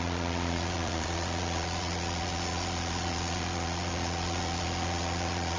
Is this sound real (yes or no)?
no